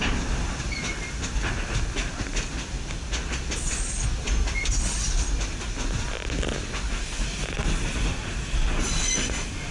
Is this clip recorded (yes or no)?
yes